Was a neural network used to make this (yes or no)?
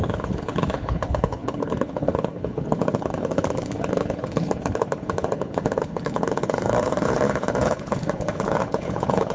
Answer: yes